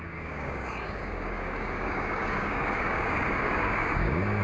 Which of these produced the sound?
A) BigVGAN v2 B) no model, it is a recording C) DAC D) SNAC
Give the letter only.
C